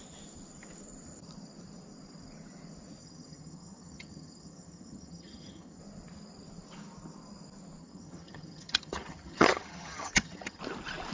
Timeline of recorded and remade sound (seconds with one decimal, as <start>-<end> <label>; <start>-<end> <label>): 0.0-3.0 recorded; 3.0-5.8 remade; 5.8-7.8 recorded; 7.8-10.6 remade; 10.6-11.1 recorded